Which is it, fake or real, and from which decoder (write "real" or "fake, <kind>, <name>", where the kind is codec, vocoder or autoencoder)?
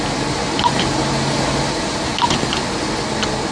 real